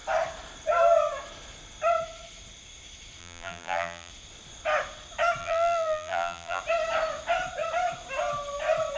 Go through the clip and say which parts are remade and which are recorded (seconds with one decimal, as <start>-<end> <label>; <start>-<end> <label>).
0.0-3.2 recorded; 3.2-4.1 remade; 4.1-5.4 recorded; 5.4-6.6 remade; 6.6-9.0 recorded